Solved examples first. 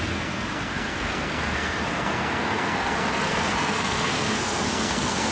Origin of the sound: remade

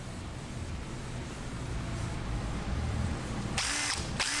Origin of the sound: remade